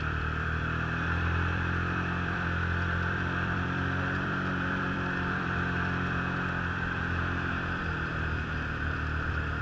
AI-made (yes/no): yes